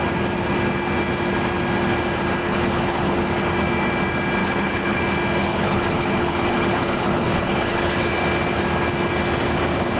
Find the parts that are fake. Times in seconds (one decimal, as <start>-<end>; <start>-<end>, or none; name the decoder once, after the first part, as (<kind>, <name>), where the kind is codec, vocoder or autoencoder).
2.4-3.2 (codec, HILCodec); 4.4-5.0; 5.4-8.1